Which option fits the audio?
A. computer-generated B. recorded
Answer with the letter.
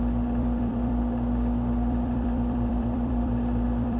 A